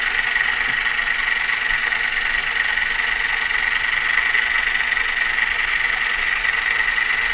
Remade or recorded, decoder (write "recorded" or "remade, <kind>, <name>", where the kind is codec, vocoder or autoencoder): recorded